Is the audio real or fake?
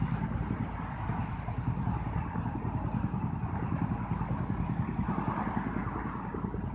real